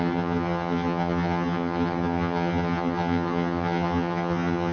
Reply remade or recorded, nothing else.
remade